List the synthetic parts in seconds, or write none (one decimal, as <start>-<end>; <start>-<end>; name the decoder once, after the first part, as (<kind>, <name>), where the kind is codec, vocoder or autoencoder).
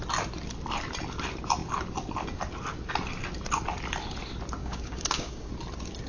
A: 4.6-5.5 (codec, DAC)